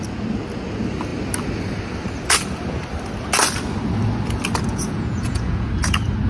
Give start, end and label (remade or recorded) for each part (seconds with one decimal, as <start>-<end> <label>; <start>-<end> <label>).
0.0-4.7 recorded; 4.7-5.7 remade; 5.7-6.3 recorded